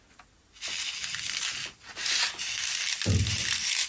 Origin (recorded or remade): recorded